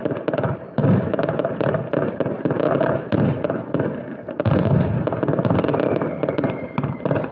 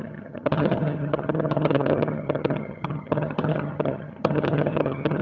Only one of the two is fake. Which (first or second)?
second